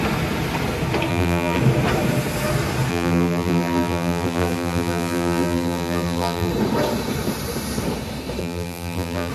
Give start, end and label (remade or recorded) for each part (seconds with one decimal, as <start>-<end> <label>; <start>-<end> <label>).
0.0-1.1 recorded; 1.1-1.6 remade; 1.6-2.9 recorded; 2.9-6.5 remade; 6.5-8.4 recorded; 8.4-9.3 remade